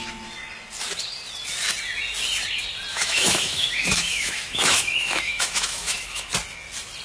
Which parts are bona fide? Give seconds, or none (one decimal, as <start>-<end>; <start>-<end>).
0.0-2.9; 6.3-7.0